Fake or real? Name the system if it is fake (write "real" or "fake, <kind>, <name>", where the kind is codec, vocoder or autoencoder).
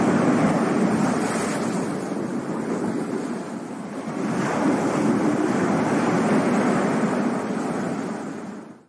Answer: real